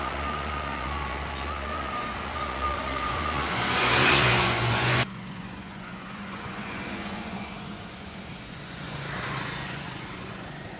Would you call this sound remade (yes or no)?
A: yes